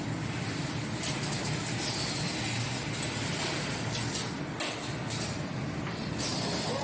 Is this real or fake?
real